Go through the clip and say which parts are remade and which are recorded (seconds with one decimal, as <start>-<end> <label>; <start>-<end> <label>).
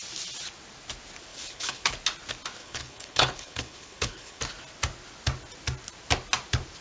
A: 0.0-1.3 recorded; 1.3-1.9 remade; 1.9-2.6 recorded; 2.6-4.4 remade; 4.4-6.8 recorded